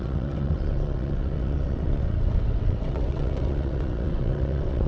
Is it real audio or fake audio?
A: fake